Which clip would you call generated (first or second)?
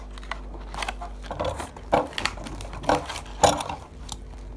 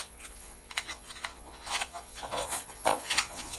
second